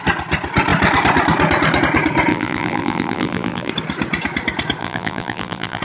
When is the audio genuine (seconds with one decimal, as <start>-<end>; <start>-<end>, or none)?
0.0-2.3; 3.7-4.8